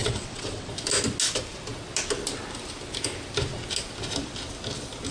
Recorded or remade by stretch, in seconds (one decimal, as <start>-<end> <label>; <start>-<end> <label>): 0.0-0.7 remade; 0.7-5.1 recorded